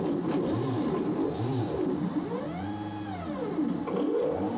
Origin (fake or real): real